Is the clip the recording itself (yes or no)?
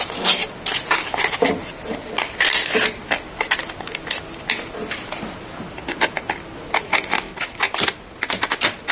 yes